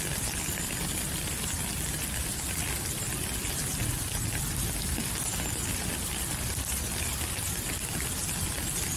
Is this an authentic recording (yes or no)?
yes